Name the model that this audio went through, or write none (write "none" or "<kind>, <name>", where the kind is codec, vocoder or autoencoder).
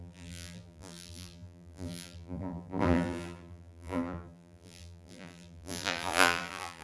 vocoder, BigVGAN v2